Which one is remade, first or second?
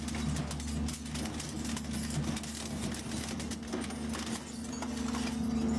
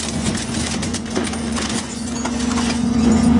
second